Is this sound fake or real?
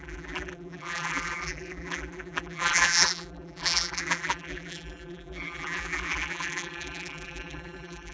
fake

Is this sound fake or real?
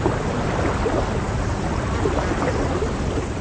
real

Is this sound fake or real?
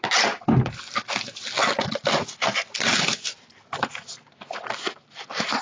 real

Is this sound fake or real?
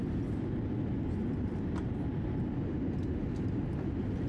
real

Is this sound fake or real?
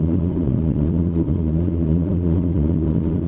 fake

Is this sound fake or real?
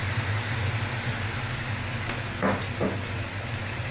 real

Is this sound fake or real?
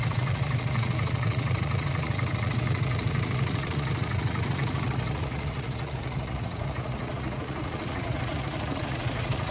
fake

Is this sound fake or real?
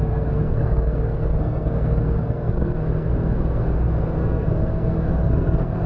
fake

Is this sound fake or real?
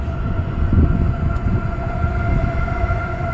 fake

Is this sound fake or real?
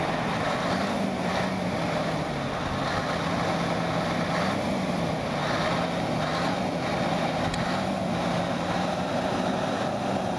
real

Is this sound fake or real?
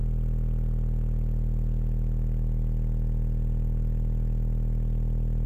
real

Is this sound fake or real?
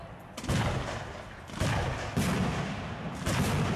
real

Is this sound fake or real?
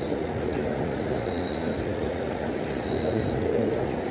fake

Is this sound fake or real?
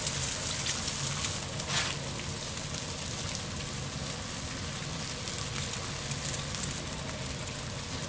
real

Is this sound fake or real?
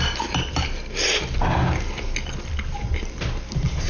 real